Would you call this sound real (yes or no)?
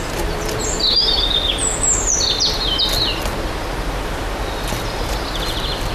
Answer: yes